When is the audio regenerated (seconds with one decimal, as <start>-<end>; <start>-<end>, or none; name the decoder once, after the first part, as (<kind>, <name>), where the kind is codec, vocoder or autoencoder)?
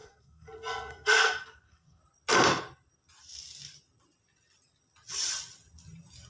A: 0.0-2.0 (codec, SNAC)